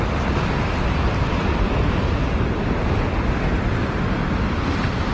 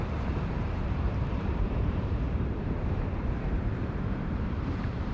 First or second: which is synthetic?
second